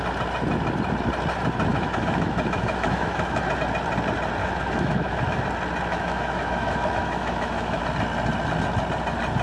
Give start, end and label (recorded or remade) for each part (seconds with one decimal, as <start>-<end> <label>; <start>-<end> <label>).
0.0-1.7 recorded; 1.7-3.4 remade; 3.4-4.4 recorded; 4.4-5.4 remade; 5.4-5.9 recorded; 5.9-7.8 remade; 7.8-9.4 recorded